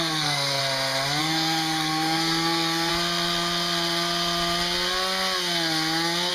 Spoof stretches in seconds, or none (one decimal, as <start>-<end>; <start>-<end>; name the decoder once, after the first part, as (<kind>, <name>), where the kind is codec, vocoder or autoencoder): 0.0-0.6 (codec, SNAC); 1.2-2.9